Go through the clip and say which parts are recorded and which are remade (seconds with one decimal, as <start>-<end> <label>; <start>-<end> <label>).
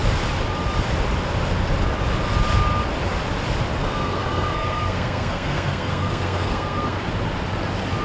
0.0-3.8 recorded; 3.8-7.1 remade; 7.1-8.0 recorded